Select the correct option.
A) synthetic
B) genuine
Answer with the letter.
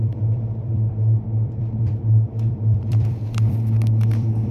A